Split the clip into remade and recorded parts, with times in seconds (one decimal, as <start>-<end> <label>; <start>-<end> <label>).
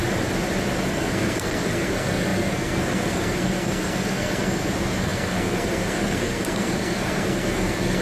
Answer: 0.0-0.9 recorded; 0.9-8.0 remade